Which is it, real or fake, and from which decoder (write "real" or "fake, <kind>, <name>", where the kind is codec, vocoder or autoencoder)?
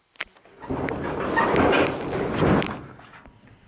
real